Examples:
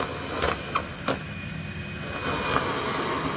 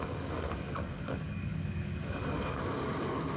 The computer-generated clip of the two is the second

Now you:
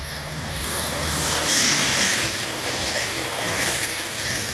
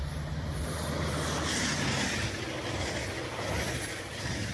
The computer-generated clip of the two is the first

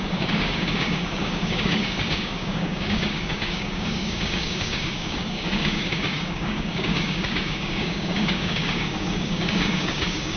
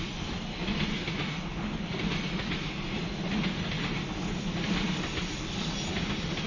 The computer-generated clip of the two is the first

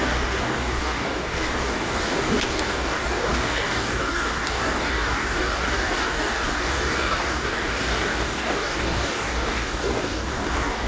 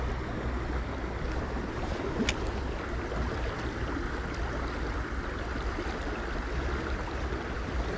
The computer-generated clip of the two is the first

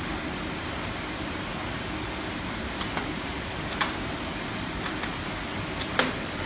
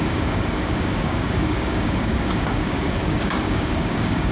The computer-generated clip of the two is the second